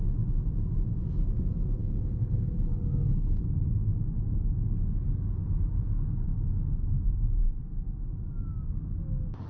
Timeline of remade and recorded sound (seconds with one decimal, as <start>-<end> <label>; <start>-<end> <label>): 0.0-1.8 recorded; 1.8-3.4 remade; 3.4-9.5 recorded